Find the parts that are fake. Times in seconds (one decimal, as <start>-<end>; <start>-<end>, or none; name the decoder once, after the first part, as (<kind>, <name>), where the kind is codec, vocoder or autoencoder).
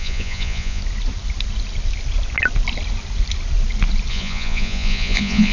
0.0-0.8 (vocoder, Vocos); 4.1-5.5